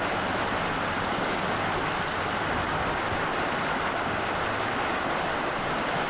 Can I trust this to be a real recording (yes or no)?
yes